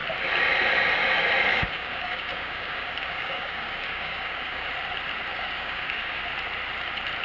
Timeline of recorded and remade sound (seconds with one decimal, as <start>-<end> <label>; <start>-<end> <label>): 0.0-1.5 recorded; 1.5-4.7 remade; 4.7-5.3 recorded; 5.3-6.2 remade; 6.2-7.2 recorded